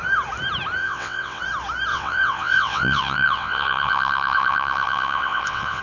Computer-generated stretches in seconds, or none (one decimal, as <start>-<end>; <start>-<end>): 0.8-1.4; 1.9-5.8